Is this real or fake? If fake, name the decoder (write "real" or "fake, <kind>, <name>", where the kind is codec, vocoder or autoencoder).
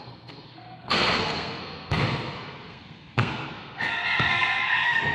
fake, codec, SNAC